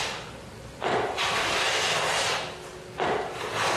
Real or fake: real